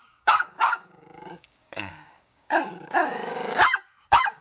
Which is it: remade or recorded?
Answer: remade